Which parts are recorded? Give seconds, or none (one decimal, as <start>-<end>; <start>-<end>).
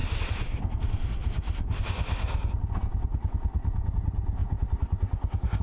0.0-5.6